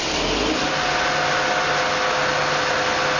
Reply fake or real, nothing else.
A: real